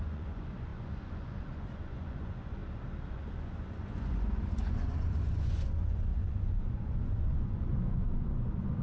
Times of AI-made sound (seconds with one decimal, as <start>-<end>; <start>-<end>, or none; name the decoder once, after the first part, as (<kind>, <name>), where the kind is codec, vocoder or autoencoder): 0.0-2.6 (vocoder, Vocos); 3.1-8.8